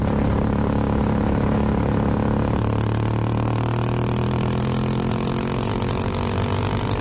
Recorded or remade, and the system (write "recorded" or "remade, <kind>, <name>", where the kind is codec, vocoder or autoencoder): recorded